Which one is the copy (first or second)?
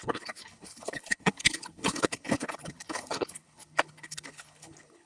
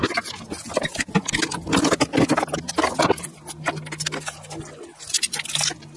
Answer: first